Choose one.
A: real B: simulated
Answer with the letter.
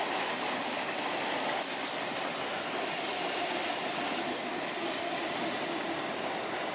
A